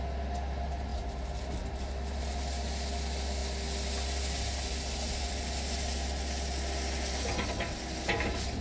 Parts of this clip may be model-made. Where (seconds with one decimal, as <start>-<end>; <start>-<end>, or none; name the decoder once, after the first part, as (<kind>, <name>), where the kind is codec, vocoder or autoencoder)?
0.9-2.2 (vocoder, BigVGAN v2)